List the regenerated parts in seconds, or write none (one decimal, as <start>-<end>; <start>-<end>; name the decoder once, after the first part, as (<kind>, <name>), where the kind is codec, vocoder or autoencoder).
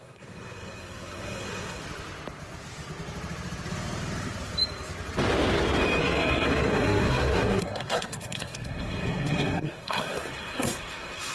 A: 0.0-1.8 (codec, SNAC); 6.0-11.3